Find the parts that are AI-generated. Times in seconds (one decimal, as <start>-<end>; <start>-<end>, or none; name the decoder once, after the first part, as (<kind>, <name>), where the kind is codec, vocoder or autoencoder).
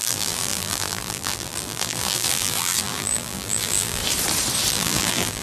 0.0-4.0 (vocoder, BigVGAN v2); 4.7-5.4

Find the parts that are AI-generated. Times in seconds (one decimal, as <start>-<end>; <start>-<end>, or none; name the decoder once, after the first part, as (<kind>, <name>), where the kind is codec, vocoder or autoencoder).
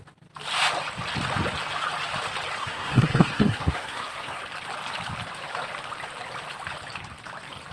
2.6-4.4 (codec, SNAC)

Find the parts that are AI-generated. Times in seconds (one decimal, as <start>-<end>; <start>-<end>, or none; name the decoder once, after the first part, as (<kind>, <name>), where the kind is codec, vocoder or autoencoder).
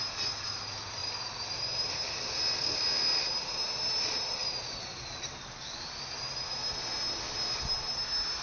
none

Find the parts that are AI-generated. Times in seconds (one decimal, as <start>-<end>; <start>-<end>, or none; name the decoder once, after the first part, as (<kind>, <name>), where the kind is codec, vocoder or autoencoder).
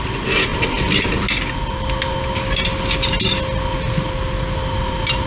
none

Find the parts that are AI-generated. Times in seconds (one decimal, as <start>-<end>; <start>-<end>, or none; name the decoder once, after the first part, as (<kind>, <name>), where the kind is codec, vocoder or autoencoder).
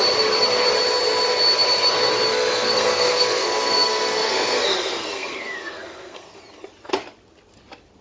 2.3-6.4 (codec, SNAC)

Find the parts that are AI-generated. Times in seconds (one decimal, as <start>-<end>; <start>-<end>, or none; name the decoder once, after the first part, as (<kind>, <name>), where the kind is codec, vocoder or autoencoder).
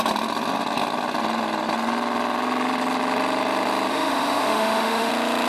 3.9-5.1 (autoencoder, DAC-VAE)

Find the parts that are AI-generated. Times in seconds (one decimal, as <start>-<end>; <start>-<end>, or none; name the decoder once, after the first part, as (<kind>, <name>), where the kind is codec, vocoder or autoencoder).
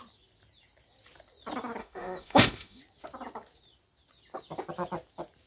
1.8-2.8 (autoencoder, DAC-VAE)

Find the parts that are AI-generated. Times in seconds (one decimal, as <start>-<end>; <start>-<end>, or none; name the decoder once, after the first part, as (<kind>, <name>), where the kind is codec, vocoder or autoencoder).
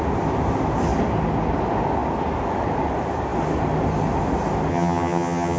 4.7-5.6 (vocoder, HiFi-GAN)